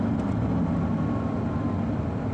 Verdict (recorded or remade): recorded